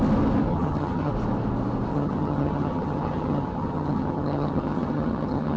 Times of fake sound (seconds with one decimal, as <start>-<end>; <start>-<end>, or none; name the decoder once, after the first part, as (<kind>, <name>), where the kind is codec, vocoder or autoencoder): 0.5-1.1 (vocoder, HiFi-GAN); 1.9-5.6